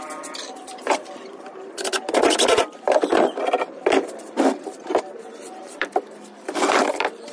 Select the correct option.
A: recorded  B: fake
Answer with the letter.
B